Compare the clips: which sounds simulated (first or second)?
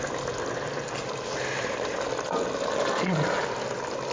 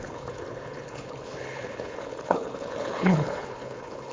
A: second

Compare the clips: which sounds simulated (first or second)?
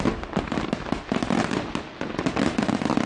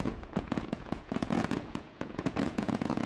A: second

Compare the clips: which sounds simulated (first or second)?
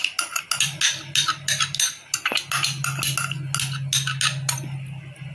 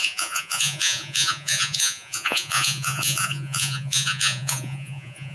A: second